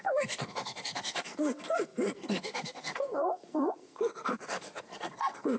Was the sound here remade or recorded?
remade